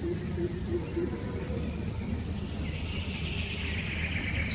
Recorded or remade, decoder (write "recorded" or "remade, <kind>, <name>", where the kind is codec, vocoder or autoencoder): recorded